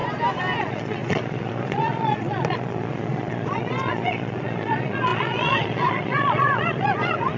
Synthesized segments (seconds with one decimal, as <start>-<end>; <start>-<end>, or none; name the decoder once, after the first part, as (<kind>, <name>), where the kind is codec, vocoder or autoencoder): 0.6-7.4 (vocoder, Vocos)